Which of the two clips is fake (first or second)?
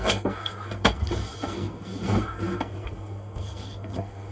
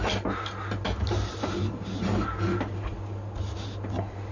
first